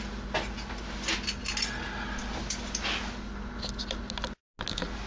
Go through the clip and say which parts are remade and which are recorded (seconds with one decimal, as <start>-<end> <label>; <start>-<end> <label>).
0.0-5.1 recorded